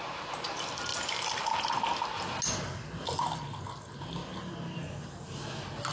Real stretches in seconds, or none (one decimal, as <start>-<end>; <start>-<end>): 0.0-4.2; 5.4-5.9